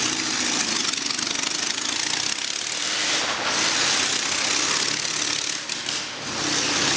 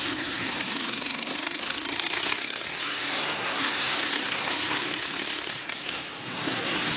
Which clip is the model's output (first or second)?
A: second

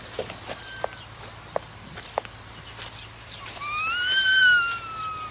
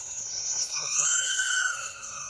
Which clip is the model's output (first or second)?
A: second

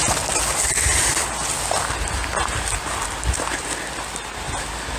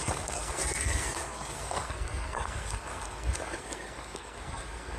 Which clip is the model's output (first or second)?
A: second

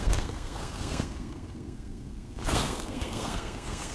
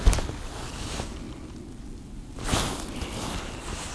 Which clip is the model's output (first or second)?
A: first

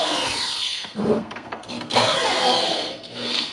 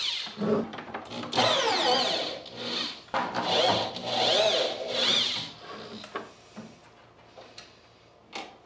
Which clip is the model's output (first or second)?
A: first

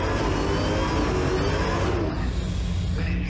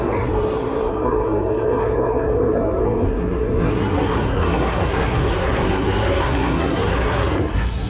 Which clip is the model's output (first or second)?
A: second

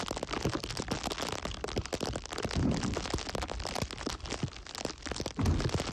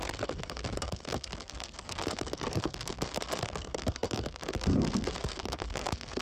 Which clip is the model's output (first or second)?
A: second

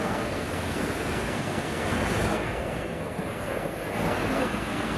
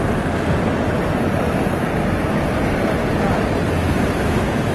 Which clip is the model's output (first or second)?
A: first